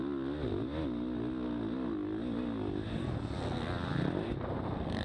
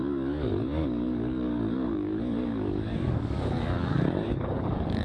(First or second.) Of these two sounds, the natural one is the first